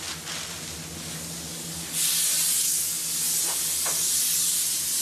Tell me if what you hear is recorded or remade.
recorded